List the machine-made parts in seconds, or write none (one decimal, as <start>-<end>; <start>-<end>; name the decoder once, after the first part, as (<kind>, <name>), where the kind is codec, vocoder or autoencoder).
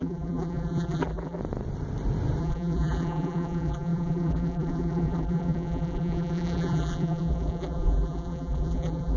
0.0-1.4 (vocoder, BigVGAN v2); 2.4-9.2